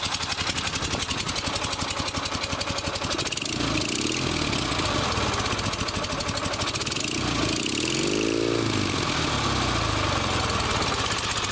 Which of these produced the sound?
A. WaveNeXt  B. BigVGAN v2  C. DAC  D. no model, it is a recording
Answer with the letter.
D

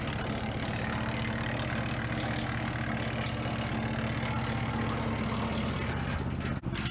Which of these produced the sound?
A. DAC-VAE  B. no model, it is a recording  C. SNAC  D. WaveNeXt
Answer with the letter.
B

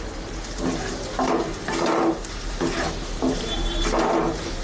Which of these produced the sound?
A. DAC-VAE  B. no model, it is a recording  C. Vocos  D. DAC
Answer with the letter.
B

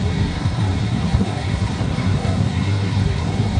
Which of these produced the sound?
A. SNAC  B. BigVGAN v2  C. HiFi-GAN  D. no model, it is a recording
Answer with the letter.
A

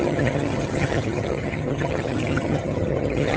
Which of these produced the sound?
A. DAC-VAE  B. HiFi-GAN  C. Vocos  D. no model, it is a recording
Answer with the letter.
B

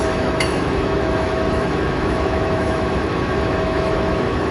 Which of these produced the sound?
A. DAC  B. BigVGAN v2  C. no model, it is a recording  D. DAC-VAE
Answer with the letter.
D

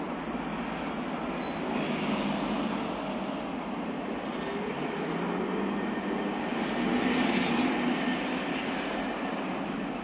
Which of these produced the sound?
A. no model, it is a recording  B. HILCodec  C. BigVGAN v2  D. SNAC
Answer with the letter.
A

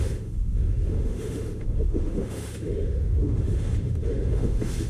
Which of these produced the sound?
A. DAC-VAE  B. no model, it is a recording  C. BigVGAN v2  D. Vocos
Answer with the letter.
A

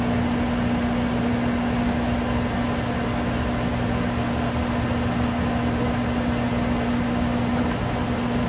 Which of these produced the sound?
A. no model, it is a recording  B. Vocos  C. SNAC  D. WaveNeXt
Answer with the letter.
A